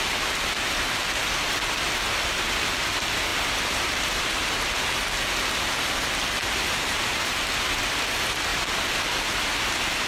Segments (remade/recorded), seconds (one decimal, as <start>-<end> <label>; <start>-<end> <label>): 0.0-3.3 recorded; 3.3-4.7 remade; 4.7-6.4 recorded; 6.4-7.3 remade; 7.3-10.1 recorded